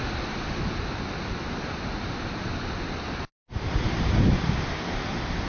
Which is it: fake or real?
real